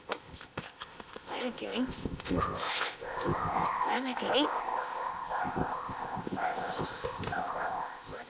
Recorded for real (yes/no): no